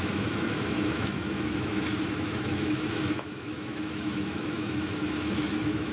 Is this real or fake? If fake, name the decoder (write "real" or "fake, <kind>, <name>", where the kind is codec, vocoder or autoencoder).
fake, autoencoder, DAC-VAE